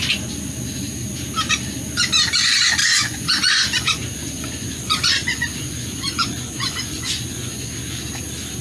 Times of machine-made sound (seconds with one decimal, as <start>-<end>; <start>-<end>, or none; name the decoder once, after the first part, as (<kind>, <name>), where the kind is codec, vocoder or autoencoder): 2.8-7.7 (vocoder, Vocos)